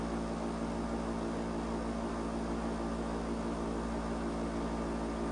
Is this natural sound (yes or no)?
yes